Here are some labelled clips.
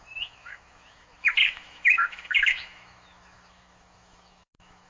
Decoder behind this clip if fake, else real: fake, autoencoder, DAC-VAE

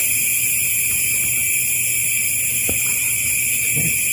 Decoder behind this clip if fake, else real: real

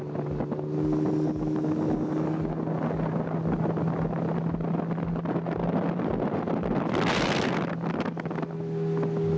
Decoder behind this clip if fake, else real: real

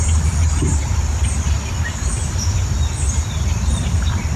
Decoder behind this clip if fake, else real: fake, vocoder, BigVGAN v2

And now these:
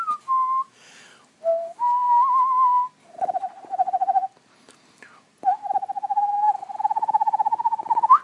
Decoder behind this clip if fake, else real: real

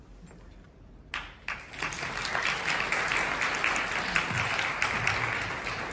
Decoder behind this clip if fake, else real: real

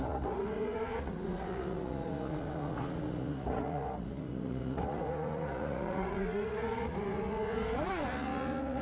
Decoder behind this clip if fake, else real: fake, vocoder, Vocos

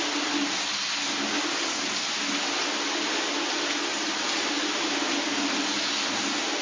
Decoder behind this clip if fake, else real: real